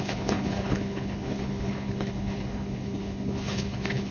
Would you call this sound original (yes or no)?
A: no